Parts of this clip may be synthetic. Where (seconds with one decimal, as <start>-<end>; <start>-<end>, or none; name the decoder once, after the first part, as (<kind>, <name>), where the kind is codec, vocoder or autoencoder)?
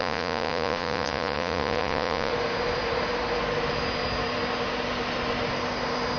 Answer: 0.0-2.3 (vocoder, Vocos)